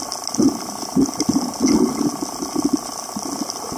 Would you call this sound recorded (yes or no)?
yes